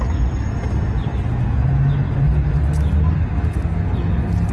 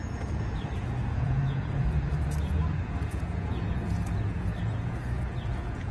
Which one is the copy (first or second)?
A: second